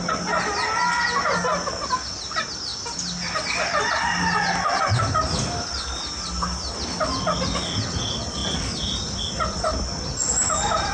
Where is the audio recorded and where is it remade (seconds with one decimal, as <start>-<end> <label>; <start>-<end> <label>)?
0.0-10.9 recorded